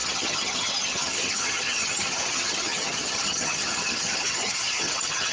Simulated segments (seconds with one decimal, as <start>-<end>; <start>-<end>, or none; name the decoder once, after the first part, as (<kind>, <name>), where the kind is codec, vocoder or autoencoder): 0.0-5.3 (vocoder, HiFi-GAN)